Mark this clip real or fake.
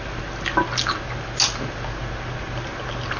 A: real